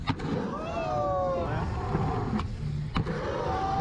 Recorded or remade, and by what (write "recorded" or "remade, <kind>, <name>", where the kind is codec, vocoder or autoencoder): recorded